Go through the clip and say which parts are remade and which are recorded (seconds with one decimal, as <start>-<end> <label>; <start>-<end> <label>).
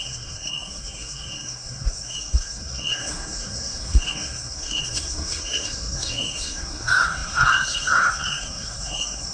0.0-9.3 remade